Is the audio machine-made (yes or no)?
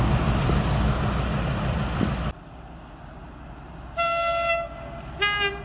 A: no